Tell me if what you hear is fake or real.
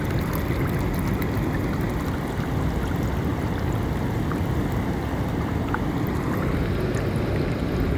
real